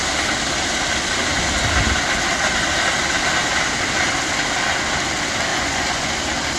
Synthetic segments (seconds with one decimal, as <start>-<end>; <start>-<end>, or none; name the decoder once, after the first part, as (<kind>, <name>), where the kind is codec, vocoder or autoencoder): 5.5-6.1 (vocoder, Vocos)